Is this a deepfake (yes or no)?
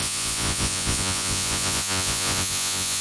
yes